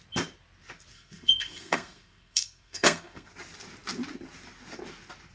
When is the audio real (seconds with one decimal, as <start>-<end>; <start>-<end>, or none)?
0.0-0.9; 3.3-5.3